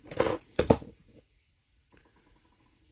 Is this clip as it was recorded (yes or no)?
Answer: no